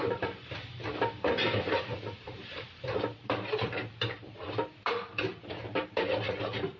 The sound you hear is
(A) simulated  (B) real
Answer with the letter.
A